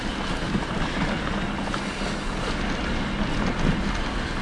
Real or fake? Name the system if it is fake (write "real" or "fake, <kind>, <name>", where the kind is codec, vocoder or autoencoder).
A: real